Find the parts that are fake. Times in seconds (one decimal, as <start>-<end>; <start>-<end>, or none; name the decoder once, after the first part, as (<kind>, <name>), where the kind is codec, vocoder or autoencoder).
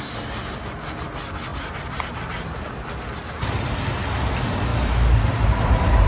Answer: 4.7-6.1 (vocoder, BigVGAN v2)